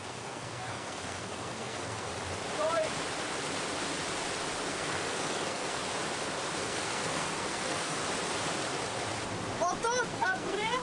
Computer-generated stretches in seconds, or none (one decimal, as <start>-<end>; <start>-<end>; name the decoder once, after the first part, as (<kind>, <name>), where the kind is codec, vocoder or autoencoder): 0.0-2.1 (codec, SNAC); 4.7-5.8; 6.6-8.0; 10.1-10.8